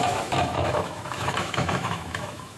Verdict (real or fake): fake